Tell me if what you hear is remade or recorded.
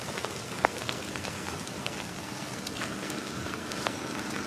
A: remade